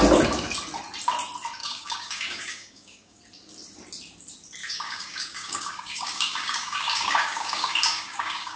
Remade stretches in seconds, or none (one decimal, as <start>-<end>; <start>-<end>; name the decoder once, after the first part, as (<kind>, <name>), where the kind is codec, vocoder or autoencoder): 1.6-3.2 (codec, DAC); 4.6-8.6